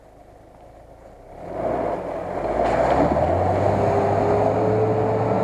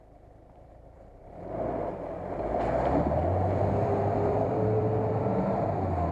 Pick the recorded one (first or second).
first